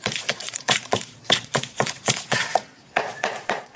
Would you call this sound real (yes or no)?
no